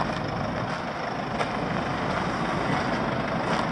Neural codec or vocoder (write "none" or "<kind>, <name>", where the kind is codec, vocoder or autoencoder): none